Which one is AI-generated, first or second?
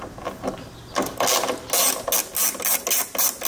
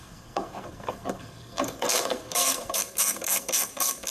second